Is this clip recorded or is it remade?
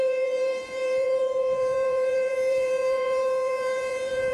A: remade